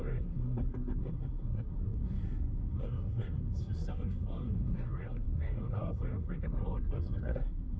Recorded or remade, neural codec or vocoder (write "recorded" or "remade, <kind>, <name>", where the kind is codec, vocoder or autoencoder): remade, codec, SNAC